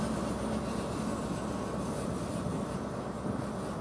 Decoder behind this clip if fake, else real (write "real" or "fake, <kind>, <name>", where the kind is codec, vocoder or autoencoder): real